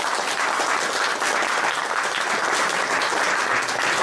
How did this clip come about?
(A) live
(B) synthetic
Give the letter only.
A